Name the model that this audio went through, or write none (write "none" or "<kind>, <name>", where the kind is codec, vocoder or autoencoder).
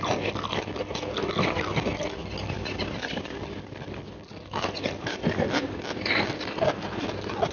none